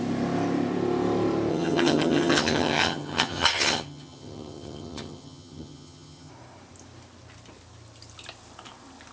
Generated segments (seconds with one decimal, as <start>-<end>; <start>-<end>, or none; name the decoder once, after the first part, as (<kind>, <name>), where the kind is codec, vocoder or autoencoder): 1.5-6.3 (vocoder, HiFi-GAN)